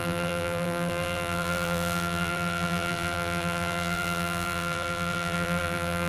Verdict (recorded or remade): remade